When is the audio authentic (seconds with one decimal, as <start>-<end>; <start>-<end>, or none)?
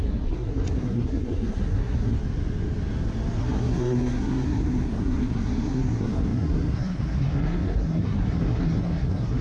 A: 2.2-3.4